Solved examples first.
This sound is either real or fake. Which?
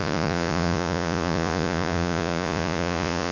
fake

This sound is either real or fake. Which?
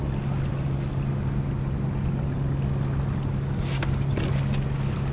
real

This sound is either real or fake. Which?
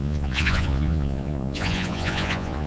fake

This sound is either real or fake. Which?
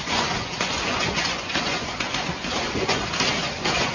fake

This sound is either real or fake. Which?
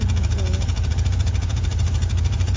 fake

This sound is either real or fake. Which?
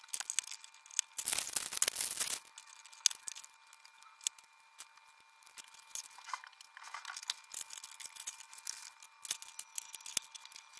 real